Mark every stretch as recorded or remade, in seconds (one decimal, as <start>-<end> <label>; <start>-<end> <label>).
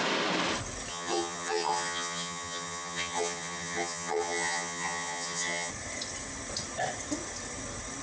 0.0-0.9 recorded; 0.9-5.7 remade; 5.7-8.0 recorded